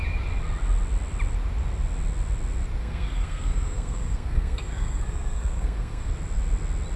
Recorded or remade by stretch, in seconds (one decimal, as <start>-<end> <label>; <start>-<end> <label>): 0.0-2.8 recorded; 2.8-6.1 remade; 6.1-7.0 recorded